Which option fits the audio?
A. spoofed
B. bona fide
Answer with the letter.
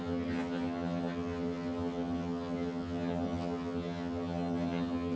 A